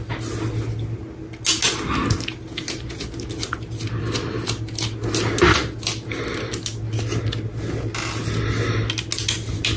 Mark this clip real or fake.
real